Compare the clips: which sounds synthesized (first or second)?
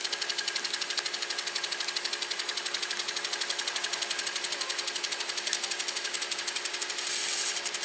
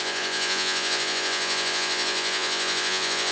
second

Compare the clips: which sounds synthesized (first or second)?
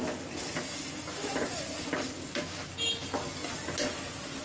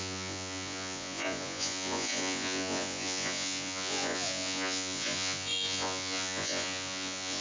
second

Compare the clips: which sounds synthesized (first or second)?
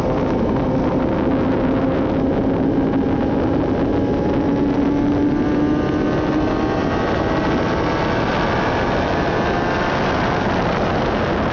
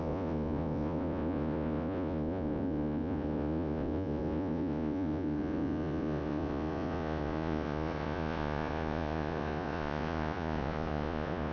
second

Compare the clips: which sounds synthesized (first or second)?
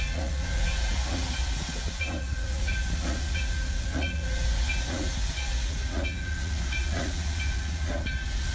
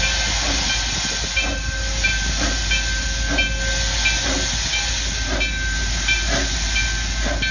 first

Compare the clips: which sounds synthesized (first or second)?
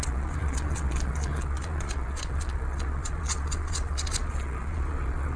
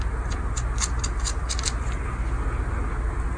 first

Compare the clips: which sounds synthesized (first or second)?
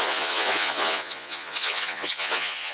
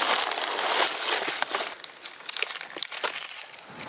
first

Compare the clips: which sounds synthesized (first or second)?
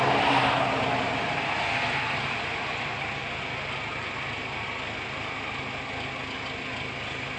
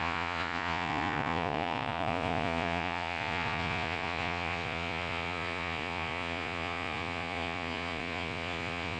second